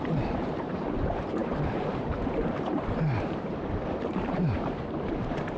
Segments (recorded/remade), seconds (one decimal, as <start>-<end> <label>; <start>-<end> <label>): 0.0-5.6 remade